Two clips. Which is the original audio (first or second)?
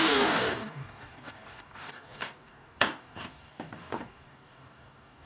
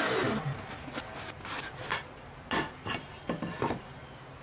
second